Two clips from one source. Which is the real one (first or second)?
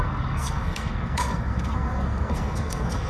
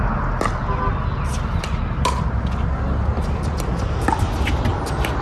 second